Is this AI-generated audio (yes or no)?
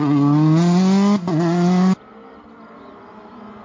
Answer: no